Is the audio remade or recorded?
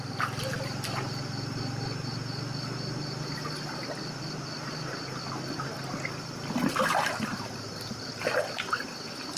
recorded